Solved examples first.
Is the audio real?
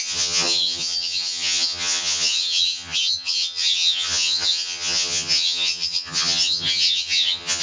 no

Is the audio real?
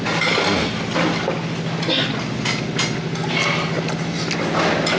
yes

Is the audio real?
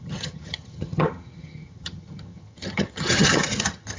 no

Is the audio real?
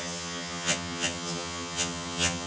no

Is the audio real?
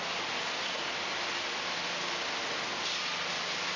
yes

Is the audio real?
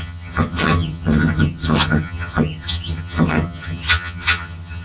no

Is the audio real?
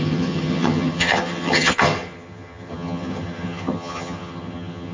no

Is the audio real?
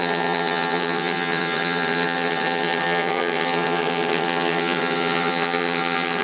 no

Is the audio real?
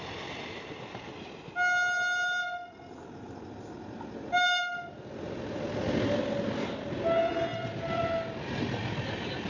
yes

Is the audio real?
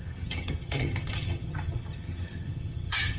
no